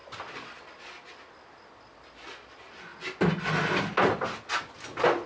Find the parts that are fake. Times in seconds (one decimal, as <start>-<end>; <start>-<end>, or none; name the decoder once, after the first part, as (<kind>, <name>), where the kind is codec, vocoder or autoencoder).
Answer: none